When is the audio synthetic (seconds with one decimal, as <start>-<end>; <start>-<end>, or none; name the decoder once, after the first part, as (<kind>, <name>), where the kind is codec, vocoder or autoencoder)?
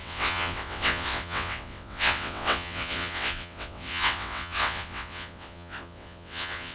0.0-6.7 (vocoder, WaveNeXt)